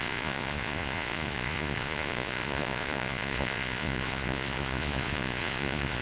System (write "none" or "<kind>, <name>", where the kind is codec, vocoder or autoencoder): vocoder, Vocos